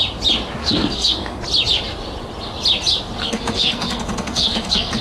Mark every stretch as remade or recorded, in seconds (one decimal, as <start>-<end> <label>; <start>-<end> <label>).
0.0-0.6 recorded; 0.6-1.4 remade; 1.4-3.2 recorded; 3.2-5.0 remade